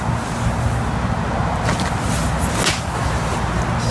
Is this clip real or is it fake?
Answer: real